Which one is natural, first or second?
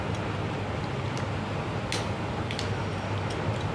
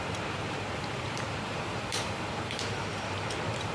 first